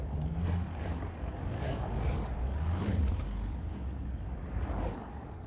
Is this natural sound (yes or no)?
no